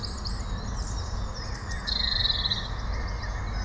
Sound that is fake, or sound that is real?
real